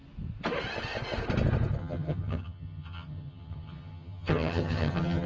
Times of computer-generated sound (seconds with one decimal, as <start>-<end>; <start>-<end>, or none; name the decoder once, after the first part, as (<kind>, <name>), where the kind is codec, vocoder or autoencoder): 1.8-5.3 (vocoder, HiFi-GAN)